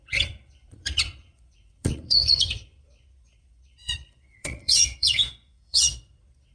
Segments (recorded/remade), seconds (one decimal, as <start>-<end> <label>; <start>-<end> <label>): 0.0-6.5 remade